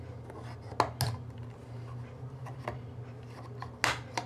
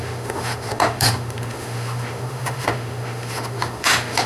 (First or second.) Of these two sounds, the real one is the first